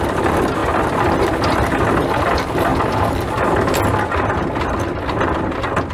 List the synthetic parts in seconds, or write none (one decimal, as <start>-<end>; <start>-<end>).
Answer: none

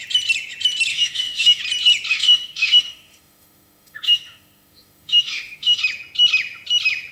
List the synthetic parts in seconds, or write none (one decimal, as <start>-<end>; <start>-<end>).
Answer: 0.9-1.6; 2.1-5.8